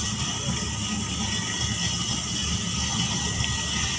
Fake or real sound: real